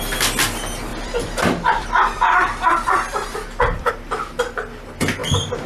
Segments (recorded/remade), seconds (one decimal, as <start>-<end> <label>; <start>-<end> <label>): 0.0-0.9 recorded; 0.9-3.9 remade; 3.9-5.7 recorded